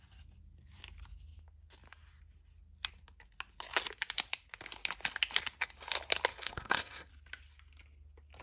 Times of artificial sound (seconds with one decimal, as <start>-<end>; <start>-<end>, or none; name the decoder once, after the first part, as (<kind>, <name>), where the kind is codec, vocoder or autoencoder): 6.3-7.1 (codec, SNAC)